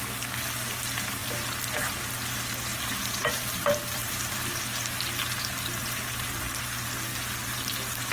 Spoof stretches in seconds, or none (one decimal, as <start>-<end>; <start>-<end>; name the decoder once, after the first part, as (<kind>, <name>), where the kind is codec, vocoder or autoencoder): 2.7-4.6 (vocoder, BigVGAN v2)